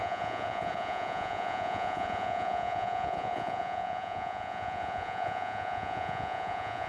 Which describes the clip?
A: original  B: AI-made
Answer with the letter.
B